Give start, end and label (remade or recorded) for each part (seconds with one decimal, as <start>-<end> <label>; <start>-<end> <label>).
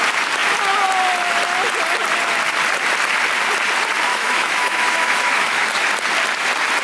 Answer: 0.0-4.1 recorded; 4.1-5.7 remade; 5.7-6.8 recorded